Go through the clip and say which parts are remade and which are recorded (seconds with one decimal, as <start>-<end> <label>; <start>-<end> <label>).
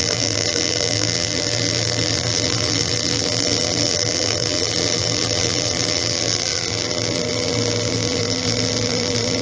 0.0-9.4 remade